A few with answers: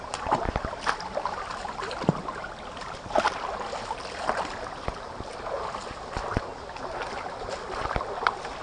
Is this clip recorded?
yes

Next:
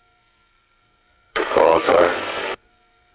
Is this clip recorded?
no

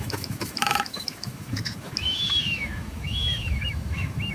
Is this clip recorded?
no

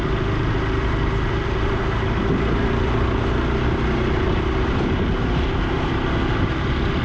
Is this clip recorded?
yes